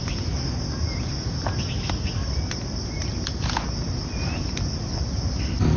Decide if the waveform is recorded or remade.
recorded